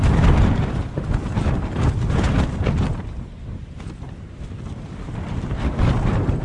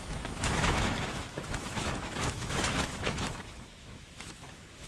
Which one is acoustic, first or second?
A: first